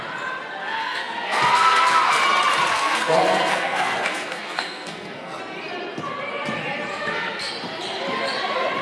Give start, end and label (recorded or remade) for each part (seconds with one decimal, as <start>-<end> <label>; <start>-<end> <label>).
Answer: 0.0-0.6 recorded; 0.6-2.2 remade; 2.2-2.7 recorded; 2.7-5.4 remade; 5.4-6.9 recorded; 6.9-7.5 remade; 7.5-8.8 recorded